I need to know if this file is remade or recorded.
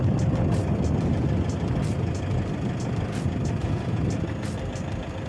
recorded